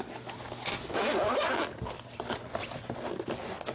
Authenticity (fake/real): real